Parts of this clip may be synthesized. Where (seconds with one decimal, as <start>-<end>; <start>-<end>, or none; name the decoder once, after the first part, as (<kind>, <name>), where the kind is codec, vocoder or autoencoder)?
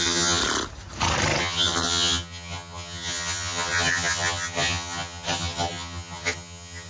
0.0-0.4 (vocoder, HiFi-GAN); 1.4-6.9